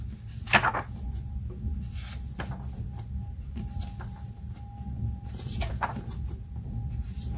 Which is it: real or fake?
real